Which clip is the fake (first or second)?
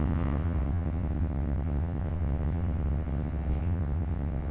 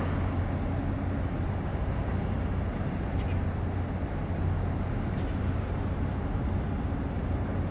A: first